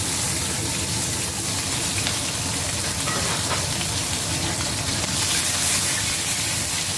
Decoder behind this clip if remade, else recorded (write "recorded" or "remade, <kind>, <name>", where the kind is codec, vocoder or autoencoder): recorded